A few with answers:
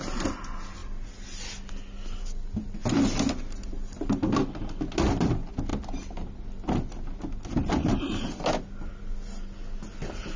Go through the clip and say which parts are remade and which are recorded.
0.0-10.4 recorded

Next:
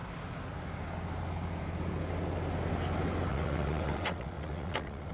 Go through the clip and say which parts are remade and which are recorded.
0.0-3.3 recorded; 3.3-5.1 remade